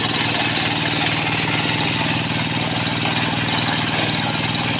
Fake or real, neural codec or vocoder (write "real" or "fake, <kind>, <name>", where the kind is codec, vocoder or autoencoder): real